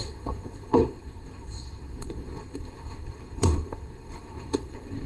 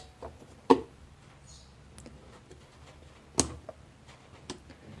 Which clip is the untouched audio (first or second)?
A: second